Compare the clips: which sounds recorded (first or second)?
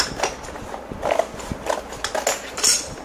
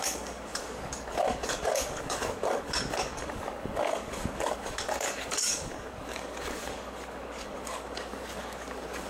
first